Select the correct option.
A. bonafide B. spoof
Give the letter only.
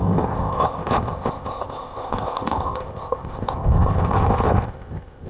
B